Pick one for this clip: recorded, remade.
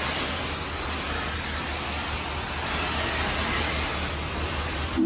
recorded